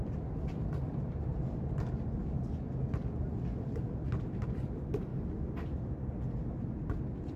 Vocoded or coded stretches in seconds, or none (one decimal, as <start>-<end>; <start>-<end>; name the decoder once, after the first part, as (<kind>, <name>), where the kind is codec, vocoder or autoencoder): 0.0-1.3 (vocoder, BigVGAN v2); 3.2-5.1; 7.0-7.4